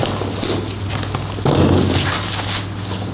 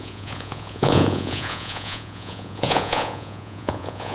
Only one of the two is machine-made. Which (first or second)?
second